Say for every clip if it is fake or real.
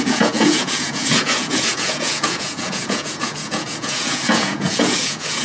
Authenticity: fake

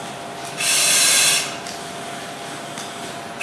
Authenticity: real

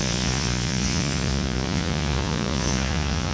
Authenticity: fake